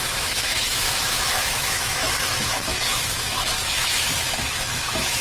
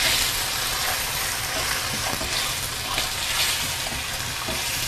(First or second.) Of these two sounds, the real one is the second